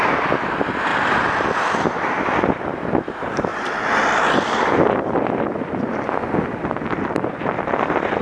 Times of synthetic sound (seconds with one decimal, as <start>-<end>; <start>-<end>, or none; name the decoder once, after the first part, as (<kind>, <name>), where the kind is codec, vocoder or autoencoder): none